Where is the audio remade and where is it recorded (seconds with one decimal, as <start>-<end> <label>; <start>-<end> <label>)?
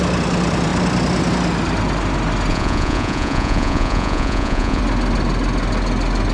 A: 0.0-2.5 recorded; 2.5-4.8 remade; 4.8-6.3 recorded